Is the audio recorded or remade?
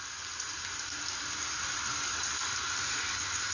recorded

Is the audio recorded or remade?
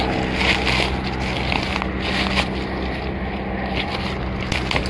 recorded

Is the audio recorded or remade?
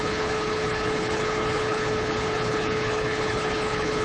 remade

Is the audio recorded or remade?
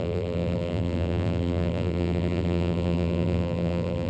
remade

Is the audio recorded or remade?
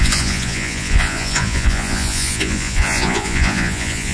remade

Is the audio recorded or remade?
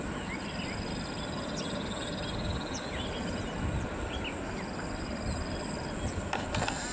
recorded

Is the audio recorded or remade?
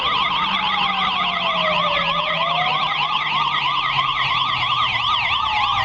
recorded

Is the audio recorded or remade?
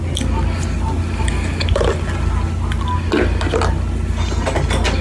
recorded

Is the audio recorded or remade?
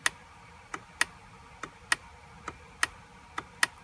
recorded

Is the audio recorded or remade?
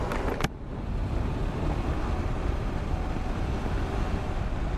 recorded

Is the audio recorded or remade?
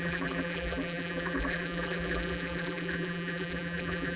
remade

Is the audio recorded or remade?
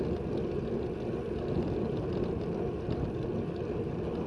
recorded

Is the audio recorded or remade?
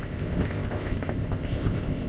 remade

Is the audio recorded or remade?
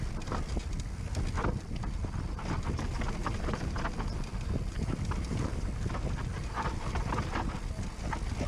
recorded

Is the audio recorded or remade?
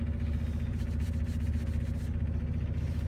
recorded